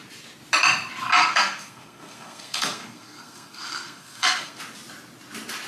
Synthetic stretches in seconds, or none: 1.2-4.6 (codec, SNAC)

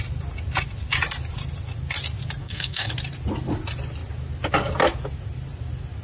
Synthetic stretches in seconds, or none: 2.4-2.9 (codec, SNAC)

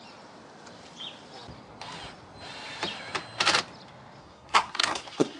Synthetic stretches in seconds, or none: 4.2-5.4 (codec, SNAC)